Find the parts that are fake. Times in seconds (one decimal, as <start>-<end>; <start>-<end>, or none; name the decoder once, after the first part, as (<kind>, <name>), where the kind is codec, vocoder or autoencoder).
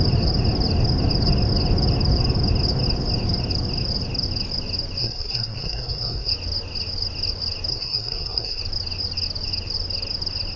5.0-6.3 (codec, SNAC); 7.7-8.6